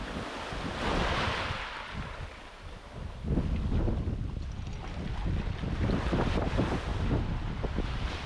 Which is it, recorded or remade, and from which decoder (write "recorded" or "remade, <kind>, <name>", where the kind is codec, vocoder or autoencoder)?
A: recorded